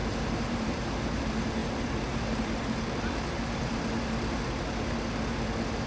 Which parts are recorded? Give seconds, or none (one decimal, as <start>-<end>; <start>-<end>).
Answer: 1.2-1.6; 3.7-5.9